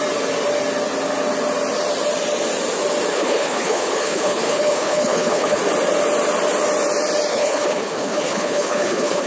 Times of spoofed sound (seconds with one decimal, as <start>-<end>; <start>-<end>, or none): 3.1-5.6; 7.3-9.3